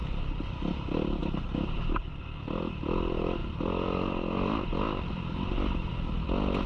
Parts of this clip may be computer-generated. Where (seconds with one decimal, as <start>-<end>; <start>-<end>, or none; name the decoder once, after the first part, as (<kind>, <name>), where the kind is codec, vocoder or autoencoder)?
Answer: 0.0-0.5 (vocoder, BigVGAN v2); 1.2-2.1; 3.4-5.9